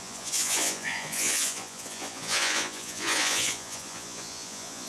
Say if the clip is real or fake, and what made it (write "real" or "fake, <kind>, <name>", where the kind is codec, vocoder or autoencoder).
fake, vocoder, Vocos